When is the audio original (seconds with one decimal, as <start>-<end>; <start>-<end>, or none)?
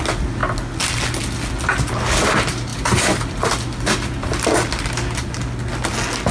0.0-2.7; 4.8-6.3